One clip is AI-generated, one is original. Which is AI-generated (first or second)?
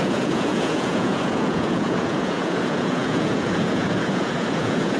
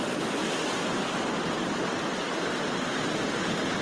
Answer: first